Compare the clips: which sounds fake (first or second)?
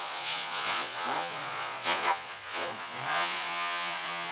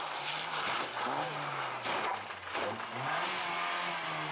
first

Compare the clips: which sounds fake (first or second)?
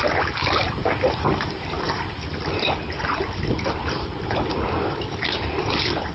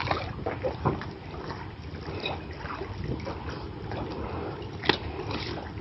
first